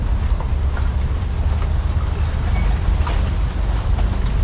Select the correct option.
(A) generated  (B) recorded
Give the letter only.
B